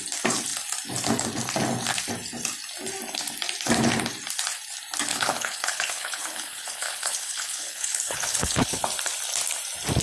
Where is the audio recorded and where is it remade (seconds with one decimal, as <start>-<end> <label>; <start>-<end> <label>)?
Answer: 0.0-5.1 recorded; 5.1-8.8 remade; 8.8-10.0 recorded